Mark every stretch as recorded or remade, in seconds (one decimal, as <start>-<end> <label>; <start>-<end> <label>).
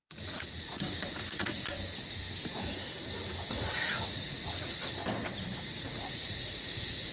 0.0-1.5 remade; 1.5-3.5 recorded; 3.5-5.0 remade; 5.0-5.6 recorded; 5.6-7.1 remade